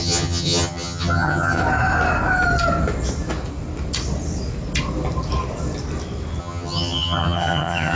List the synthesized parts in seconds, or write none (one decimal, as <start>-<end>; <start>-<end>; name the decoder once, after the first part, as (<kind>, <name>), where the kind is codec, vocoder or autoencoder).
0.0-1.6 (vocoder, HiFi-GAN); 6.4-8.0